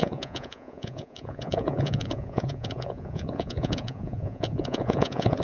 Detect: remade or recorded remade